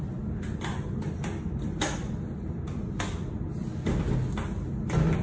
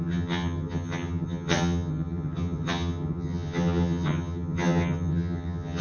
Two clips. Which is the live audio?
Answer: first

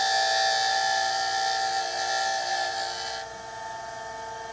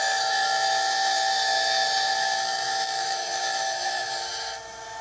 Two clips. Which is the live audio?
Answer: first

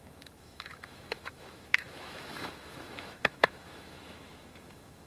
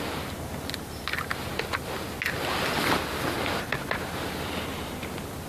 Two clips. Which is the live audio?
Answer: second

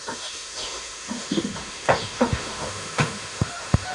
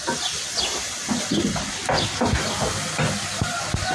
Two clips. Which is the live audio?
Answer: second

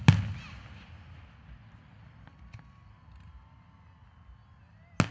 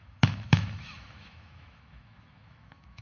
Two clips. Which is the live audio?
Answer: first